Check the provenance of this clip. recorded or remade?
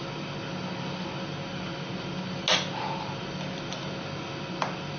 recorded